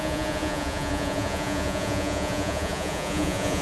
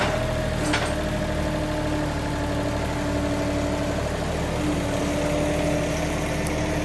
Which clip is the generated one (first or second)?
first